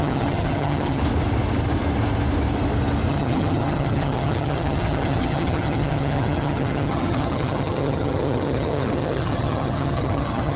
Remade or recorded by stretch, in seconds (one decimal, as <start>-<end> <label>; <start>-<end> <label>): 0.0-1.0 remade; 1.0-3.1 recorded; 3.1-10.6 remade